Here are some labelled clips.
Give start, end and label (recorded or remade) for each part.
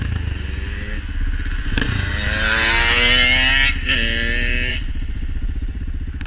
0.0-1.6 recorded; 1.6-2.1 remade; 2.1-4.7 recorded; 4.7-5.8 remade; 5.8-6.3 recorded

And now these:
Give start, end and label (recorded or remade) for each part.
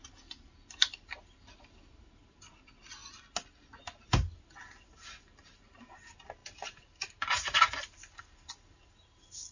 0.0-9.5 recorded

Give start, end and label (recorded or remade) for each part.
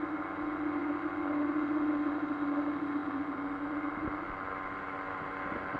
0.0-5.8 recorded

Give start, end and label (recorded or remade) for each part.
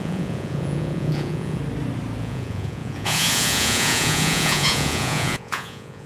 0.0-1.6 remade; 1.6-2.2 recorded; 2.2-6.1 remade